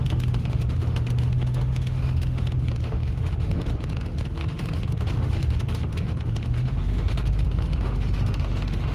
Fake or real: fake